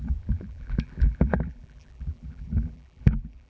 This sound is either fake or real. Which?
fake